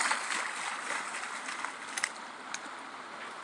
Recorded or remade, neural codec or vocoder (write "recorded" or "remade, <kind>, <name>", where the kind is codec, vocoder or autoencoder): recorded